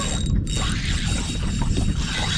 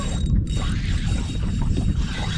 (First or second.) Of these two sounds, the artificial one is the second